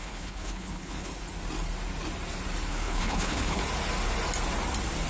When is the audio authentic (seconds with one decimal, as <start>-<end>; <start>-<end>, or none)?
1.1-2.7; 3.6-5.1